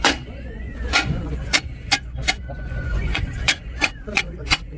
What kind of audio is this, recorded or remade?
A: remade